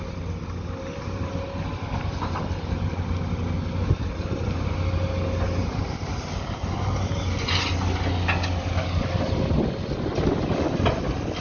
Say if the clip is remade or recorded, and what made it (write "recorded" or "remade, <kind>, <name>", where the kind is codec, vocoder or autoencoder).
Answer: recorded